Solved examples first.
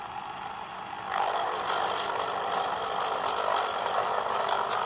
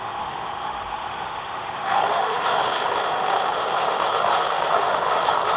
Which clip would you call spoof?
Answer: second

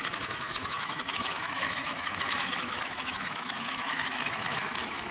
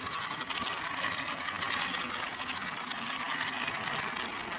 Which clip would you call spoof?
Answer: first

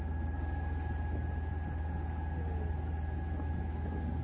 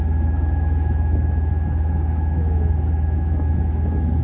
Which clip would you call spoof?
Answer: second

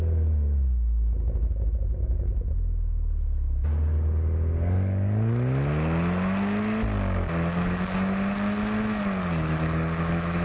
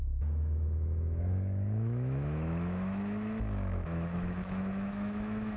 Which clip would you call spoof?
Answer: second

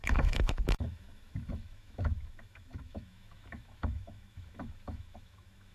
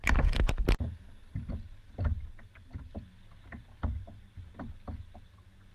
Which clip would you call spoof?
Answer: first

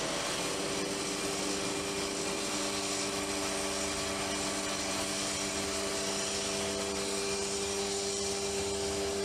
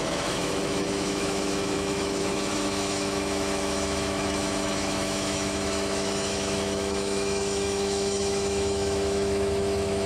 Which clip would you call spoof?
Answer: second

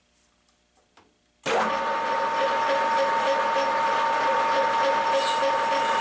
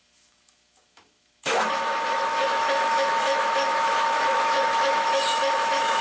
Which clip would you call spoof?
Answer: second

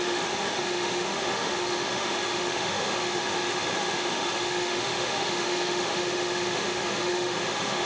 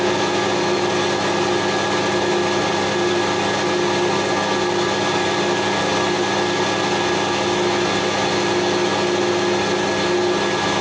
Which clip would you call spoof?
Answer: first